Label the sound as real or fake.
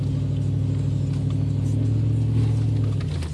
real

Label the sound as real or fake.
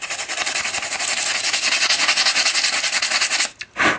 real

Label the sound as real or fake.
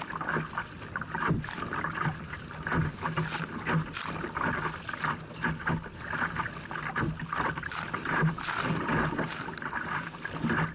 real